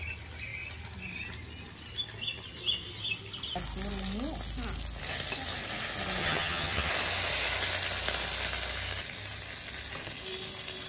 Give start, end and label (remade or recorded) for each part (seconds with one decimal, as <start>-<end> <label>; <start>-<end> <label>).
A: 0.0-6.2 recorded; 6.2-6.9 remade; 6.9-10.9 recorded